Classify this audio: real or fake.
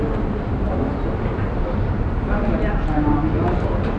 real